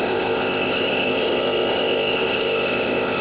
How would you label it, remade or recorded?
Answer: remade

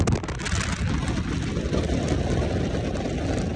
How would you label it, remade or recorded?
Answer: recorded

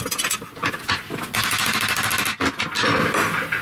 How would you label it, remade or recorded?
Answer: recorded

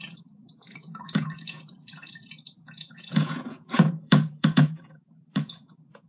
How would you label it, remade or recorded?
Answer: remade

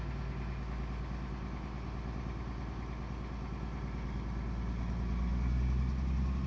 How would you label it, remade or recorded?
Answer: recorded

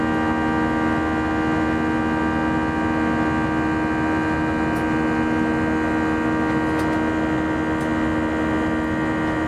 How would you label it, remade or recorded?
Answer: recorded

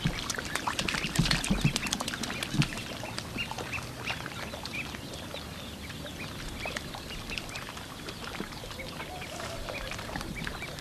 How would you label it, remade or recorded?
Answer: recorded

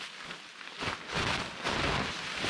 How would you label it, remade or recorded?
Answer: recorded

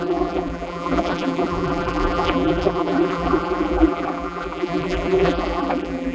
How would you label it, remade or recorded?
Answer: remade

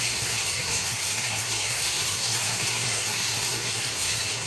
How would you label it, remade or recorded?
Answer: remade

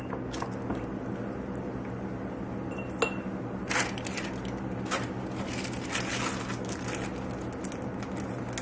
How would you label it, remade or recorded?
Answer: recorded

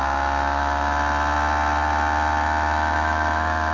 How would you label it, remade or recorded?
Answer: recorded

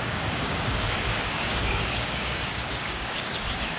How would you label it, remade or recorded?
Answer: remade